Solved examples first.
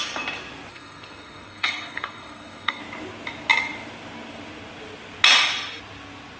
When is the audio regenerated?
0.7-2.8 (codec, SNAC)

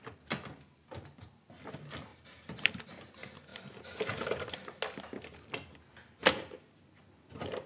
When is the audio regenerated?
2.1-2.9 (vocoder, BigVGAN v2); 3.5-4.5; 6.2-6.8

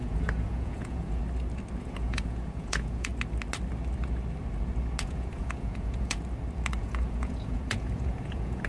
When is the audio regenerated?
0.0-1.2 (vocoder, Vocos); 1.8-3.1; 5.0-6.2; 6.8-8.7

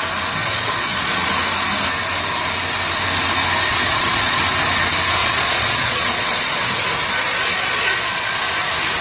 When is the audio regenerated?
0.4-1.3 (vocoder, Vocos); 3.7-4.4; 5.2-6.7; 7.3-8.4

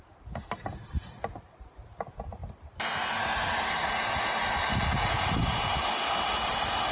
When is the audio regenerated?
none